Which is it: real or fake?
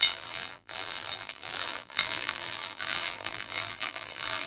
fake